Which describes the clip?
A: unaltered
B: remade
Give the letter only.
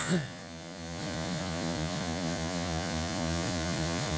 B